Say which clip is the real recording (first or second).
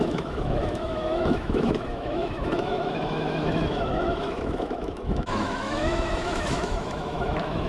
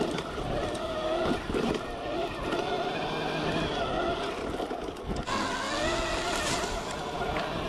second